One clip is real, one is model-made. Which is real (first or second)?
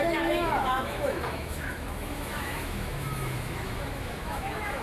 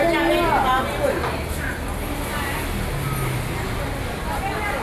second